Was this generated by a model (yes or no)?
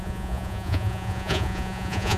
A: yes